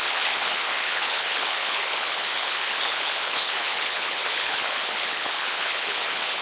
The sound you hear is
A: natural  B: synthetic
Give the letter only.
B